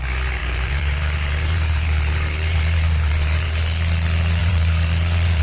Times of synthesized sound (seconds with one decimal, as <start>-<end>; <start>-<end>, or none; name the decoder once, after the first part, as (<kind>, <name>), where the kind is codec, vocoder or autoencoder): 0.4-3.6 (vocoder, BigVGAN v2); 4.4-5.4